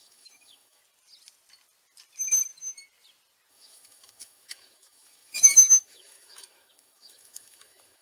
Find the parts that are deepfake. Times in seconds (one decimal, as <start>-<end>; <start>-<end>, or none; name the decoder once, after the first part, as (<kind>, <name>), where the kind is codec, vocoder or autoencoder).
0.0-0.8 (autoencoder, DAC-VAE); 3.5-8.0